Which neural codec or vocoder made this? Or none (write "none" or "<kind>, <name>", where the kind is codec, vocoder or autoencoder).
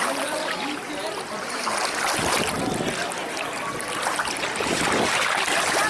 none